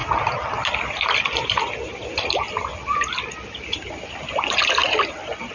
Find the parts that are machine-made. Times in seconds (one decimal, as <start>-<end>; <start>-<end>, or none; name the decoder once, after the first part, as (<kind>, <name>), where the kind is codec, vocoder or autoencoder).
4.8-5.5 (vocoder, BigVGAN v2)